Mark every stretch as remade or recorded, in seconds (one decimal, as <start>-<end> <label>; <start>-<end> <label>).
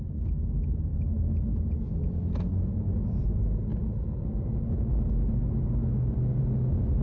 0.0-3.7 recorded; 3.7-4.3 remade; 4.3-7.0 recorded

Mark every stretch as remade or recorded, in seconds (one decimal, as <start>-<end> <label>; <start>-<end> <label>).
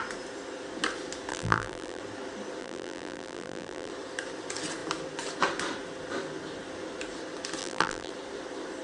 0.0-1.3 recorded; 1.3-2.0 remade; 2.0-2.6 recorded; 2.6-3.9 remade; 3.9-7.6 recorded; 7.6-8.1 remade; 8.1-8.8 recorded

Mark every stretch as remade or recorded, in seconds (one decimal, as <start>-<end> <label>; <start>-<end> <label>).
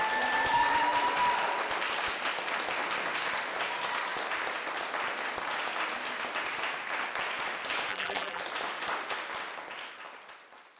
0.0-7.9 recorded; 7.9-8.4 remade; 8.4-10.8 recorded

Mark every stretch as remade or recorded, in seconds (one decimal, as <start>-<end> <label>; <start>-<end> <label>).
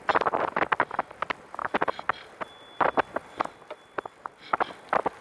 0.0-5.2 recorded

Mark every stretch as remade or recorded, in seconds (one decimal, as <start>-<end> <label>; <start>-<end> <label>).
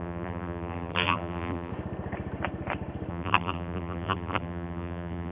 0.0-1.7 remade; 1.7-3.1 recorded; 3.1-5.3 remade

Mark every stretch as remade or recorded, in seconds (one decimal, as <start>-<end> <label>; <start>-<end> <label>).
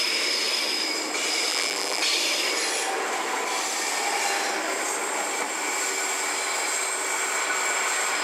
0.0-1.5 recorded; 1.5-2.0 remade; 2.0-8.2 recorded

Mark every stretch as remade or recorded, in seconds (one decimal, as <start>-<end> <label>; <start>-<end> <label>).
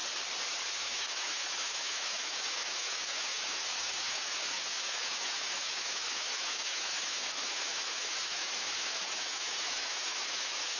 0.0-0.8 recorded; 0.8-10.8 remade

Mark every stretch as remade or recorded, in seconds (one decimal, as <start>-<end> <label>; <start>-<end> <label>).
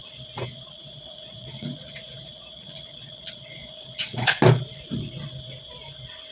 0.0-0.5 recorded; 0.5-4.3 remade; 4.3-6.3 recorded